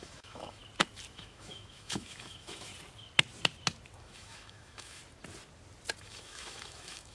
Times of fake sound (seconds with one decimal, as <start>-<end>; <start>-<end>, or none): 0.0-0.6; 1.1-2.7; 4.0-5.0; 6.0-7.1